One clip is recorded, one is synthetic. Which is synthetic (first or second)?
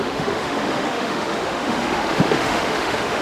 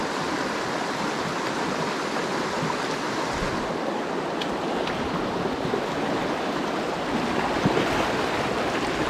first